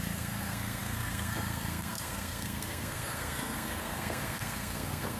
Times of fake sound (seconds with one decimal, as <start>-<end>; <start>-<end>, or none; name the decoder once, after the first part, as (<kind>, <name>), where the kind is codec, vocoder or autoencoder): 0.0-5.2 (codec, SNAC)